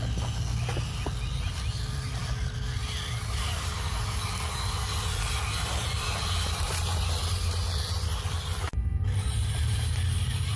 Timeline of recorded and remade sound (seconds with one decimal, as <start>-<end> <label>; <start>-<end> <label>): 0.0-10.6 recorded